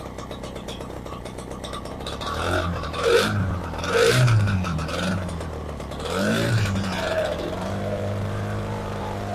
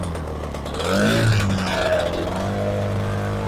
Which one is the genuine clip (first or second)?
second